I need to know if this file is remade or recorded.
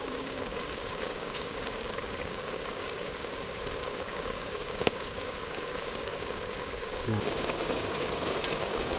remade